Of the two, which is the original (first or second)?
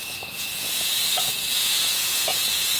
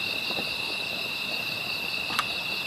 second